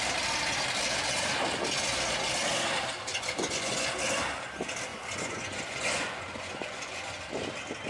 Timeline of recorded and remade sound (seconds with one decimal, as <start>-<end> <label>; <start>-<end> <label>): 0.0-3.1 recorded; 3.1-3.9 remade; 3.9-4.9 recorded; 4.9-7.2 remade; 7.2-7.9 recorded